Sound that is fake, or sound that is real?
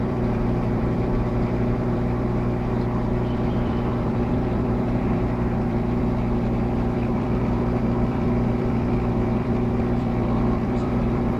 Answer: fake